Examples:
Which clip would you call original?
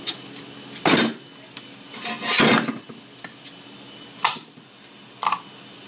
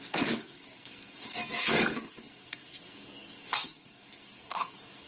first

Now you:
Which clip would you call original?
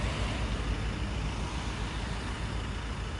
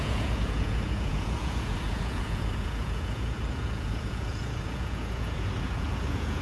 first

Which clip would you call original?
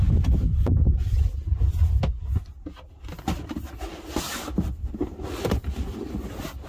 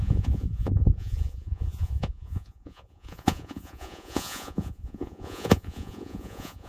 first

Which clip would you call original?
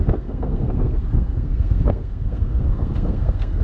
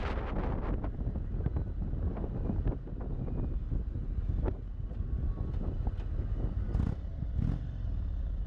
second